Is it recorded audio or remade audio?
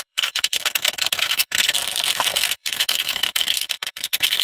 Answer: remade